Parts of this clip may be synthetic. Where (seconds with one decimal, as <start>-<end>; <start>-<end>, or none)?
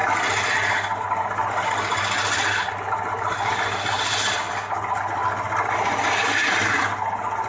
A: none